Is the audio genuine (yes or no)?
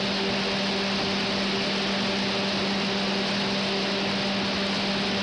yes